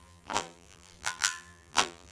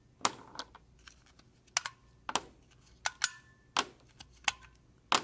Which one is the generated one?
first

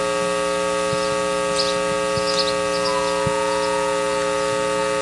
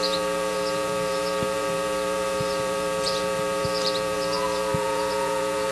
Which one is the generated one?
second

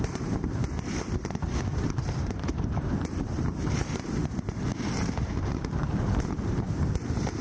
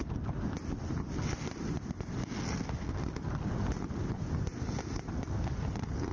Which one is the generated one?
first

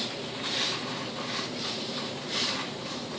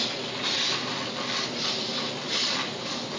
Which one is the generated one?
first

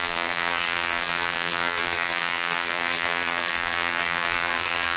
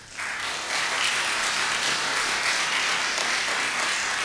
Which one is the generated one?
first